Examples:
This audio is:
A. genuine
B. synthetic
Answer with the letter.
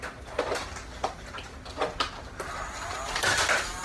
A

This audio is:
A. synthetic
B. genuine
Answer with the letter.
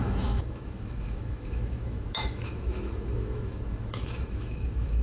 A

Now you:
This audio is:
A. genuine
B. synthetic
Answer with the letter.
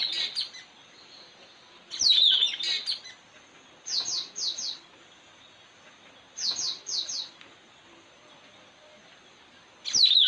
A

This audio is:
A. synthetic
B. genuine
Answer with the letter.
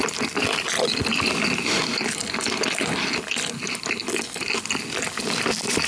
B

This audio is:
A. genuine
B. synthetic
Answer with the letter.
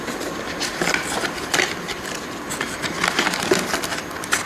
A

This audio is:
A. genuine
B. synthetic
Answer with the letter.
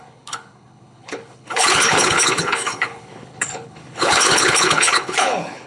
B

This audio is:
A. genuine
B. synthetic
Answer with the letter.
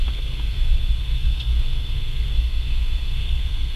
B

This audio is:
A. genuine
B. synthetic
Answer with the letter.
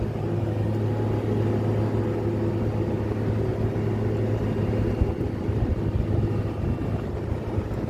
A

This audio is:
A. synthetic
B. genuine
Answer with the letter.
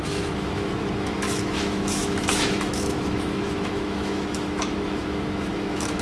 A